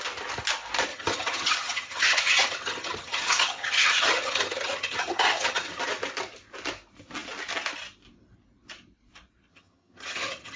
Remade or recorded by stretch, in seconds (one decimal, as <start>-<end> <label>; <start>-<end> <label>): 0.0-0.9 recorded; 0.9-5.8 remade; 5.8-9.5 recorded; 9.5-10.6 remade